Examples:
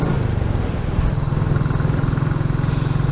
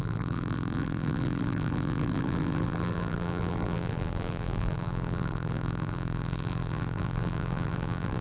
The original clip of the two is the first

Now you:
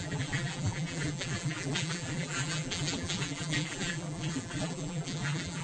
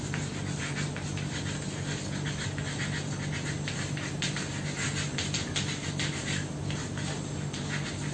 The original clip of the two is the second